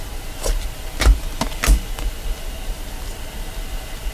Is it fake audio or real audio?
real